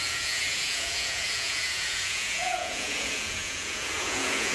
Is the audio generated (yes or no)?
yes